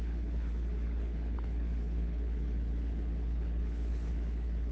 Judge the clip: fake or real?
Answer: fake